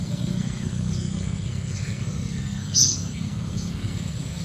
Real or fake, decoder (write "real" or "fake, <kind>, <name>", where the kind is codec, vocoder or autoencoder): fake, codec, SNAC